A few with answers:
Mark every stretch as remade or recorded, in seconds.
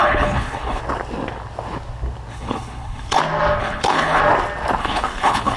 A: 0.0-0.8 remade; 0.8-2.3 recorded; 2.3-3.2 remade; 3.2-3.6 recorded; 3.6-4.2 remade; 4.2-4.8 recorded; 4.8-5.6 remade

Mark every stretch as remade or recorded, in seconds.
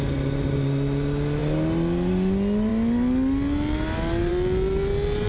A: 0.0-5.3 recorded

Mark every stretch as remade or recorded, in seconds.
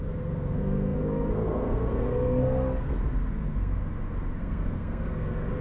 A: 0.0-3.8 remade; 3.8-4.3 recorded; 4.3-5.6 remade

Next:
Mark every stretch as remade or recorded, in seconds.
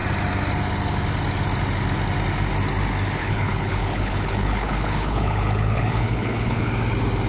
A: 0.0-3.2 recorded; 3.2-6.7 remade; 6.7-7.3 recorded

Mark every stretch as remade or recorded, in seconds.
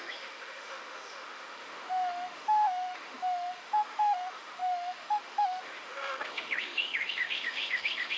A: 0.0-8.2 remade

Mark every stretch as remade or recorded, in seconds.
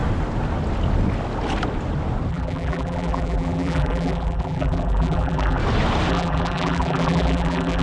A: 0.0-2.3 recorded; 2.3-5.6 remade; 5.6-6.1 recorded; 6.1-7.8 remade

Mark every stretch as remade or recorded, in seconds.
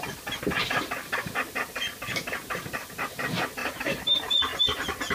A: 0.0-3.6 recorded; 3.6-4.3 remade; 4.3-5.1 recorded